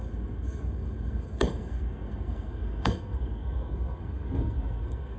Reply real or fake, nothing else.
fake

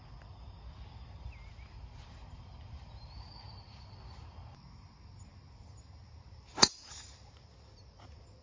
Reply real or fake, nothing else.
real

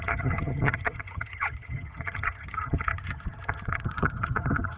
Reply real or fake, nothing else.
fake